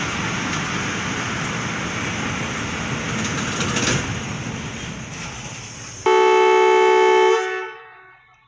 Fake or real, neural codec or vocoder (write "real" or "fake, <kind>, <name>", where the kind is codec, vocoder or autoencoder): real